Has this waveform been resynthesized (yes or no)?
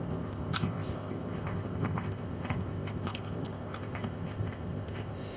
yes